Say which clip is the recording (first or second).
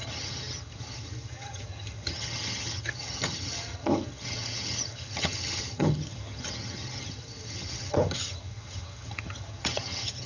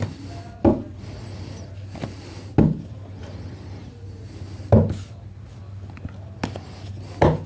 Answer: second